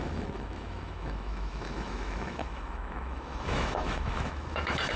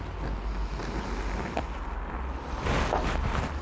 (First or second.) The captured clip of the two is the second